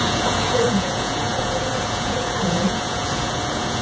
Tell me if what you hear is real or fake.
fake